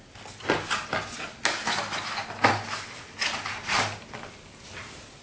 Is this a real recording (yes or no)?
yes